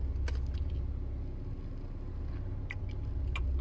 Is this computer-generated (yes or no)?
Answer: no